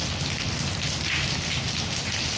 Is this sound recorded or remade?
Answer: recorded